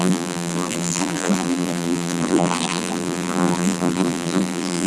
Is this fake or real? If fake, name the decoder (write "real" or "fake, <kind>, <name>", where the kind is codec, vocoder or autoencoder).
fake, vocoder, BigVGAN v2